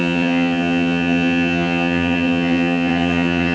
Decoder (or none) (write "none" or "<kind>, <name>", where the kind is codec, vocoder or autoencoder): vocoder, HiFi-GAN